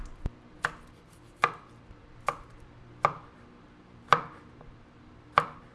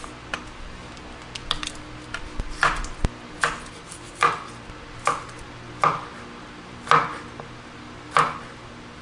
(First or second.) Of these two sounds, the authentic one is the second